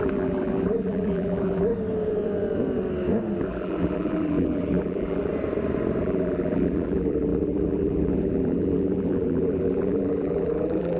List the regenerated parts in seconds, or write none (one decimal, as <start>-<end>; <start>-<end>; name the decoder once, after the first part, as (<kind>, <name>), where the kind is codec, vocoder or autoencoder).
0.0-1.7 (vocoder, BigVGAN v2); 3.4-5.3; 6.0-11.0